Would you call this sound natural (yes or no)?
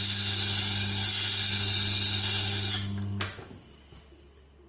yes